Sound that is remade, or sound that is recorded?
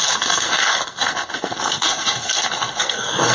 remade